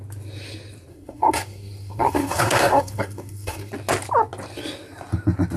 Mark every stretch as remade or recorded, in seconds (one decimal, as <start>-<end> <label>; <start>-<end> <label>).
0.0-0.9 recorded; 0.9-3.7 remade; 3.7-5.6 recorded